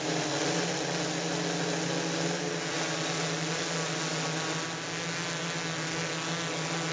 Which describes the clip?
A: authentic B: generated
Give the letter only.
A